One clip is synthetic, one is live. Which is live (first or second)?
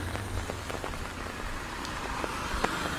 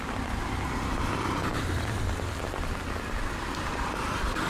first